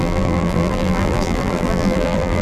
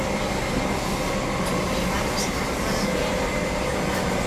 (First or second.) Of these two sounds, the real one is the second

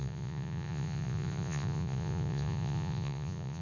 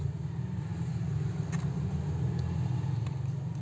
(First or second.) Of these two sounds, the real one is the second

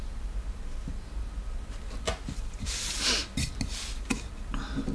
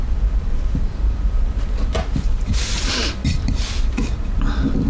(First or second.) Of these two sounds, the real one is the first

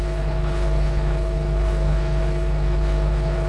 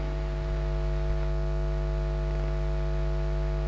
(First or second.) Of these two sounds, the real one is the second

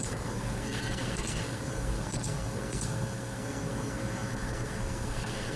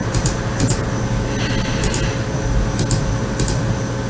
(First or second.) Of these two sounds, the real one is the second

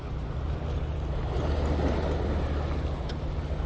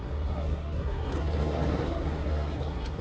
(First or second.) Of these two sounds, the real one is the first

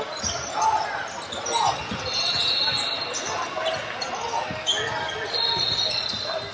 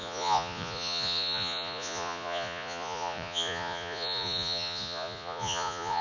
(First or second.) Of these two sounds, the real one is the first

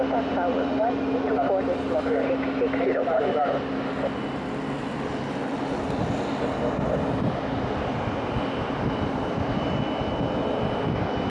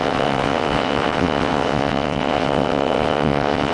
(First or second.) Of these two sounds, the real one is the first